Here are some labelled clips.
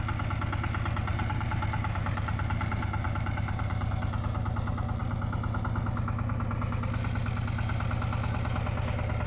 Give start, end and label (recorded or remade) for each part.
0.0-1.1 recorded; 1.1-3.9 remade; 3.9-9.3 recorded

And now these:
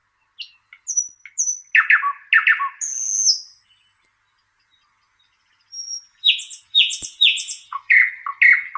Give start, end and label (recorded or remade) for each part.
0.0-5.8 recorded; 5.8-8.1 remade; 8.1-8.8 recorded

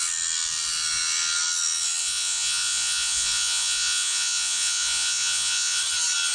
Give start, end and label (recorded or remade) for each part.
0.0-2.0 recorded; 2.0-5.8 remade; 5.8-6.3 recorded